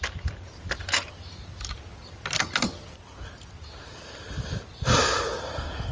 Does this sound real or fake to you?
real